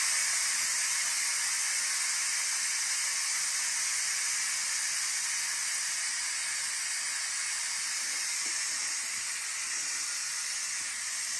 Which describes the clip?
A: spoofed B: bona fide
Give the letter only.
B